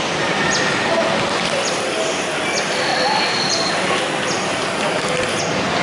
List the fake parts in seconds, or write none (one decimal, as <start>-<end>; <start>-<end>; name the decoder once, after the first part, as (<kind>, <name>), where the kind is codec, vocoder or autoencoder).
4.5-5.2 (vocoder, BigVGAN v2)